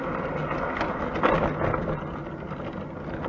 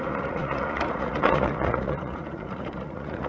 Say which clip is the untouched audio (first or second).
first